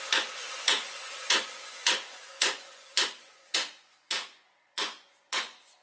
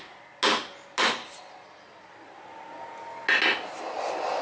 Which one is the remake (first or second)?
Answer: first